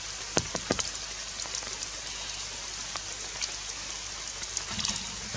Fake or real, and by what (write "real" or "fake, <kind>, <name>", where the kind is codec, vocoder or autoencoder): real